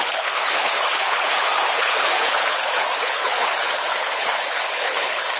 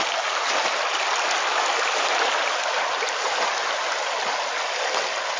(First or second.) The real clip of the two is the second